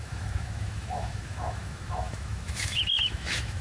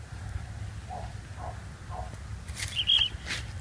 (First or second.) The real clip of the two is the second